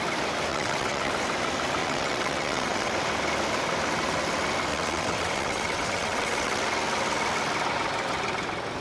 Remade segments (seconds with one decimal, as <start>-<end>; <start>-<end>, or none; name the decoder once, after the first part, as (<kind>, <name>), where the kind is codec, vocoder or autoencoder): 0.5-1.1 (vocoder, WaveNeXt); 1.8-2.9; 4.7-6.6